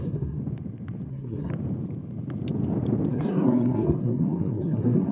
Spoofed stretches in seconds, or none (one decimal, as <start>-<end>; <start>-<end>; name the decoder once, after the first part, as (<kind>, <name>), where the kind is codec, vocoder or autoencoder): 0.0-0.4 (codec, SNAC); 1.1-1.5; 3.1-5.1